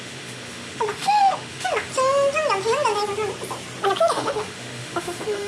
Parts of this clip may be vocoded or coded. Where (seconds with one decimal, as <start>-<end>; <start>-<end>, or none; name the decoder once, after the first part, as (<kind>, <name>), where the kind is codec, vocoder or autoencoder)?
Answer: 0.0-1.9 (autoencoder, DAC-VAE); 4.1-5.5